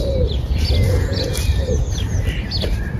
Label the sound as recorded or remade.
recorded